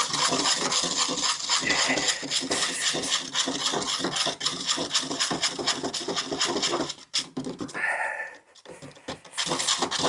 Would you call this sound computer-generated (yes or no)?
no